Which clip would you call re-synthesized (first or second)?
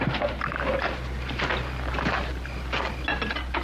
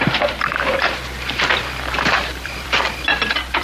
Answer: second